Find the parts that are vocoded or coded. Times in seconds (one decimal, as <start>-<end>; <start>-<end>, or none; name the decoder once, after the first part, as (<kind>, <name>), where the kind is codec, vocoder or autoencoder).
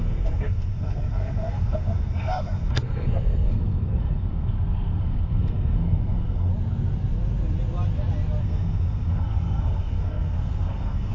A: 0.0-6.5 (codec, SNAC); 8.4-11.1